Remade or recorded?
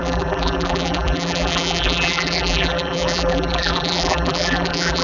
remade